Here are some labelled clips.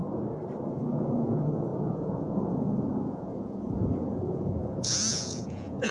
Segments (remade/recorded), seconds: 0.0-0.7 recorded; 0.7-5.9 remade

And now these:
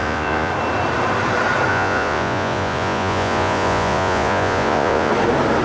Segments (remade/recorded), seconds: 0.0-0.5 remade; 0.5-1.7 recorded; 1.7-5.1 remade; 5.1-5.6 recorded

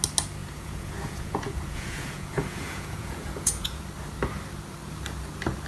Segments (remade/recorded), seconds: 0.0-0.4 recorded; 0.4-3.8 remade; 3.8-5.7 recorded

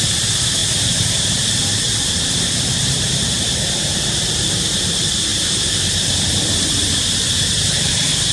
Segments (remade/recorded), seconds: 0.0-8.3 remade